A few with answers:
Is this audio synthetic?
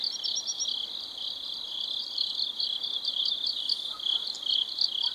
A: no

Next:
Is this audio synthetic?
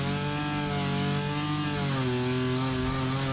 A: no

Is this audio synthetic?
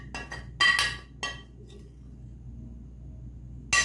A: no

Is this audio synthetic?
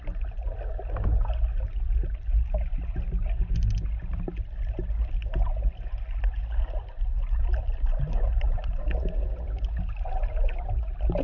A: no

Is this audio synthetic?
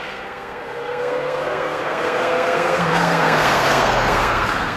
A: yes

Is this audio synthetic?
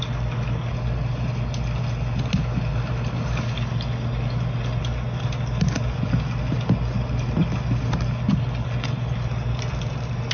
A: no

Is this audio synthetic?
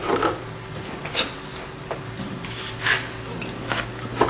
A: no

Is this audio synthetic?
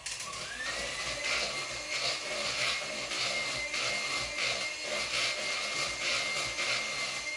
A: no